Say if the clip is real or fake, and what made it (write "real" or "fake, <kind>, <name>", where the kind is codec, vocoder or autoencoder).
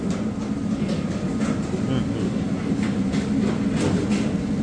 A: real